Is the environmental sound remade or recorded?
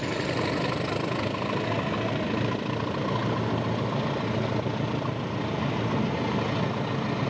recorded